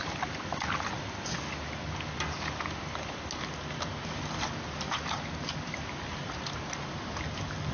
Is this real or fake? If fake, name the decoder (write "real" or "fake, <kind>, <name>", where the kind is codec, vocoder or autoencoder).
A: real